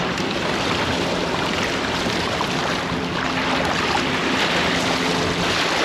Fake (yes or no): no